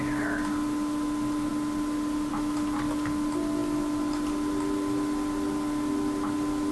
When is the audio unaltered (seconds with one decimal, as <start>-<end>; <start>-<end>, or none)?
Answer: 0.0-6.7

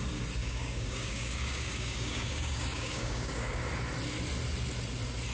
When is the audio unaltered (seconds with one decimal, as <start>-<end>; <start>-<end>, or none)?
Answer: 0.0-0.4; 3.6-5.3

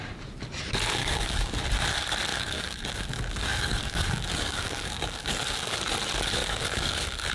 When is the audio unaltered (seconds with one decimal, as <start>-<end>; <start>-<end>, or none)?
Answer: 0.0-1.0; 1.6-2.3; 5.8-6.4